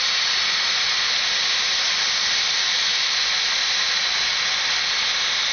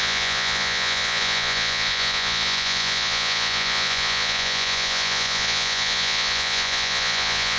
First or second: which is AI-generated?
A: second